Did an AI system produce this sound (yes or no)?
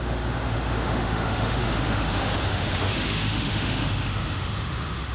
yes